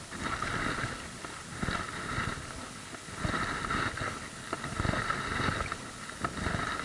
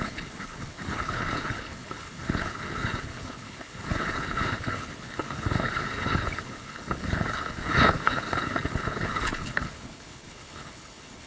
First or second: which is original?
first